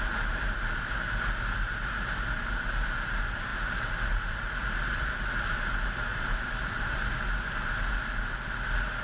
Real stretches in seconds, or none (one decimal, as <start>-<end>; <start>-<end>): 0.0-3.5; 5.2-6.1; 7.1-9.0